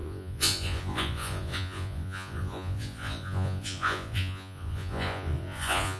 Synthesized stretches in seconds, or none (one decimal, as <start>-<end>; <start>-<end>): 0.0-6.0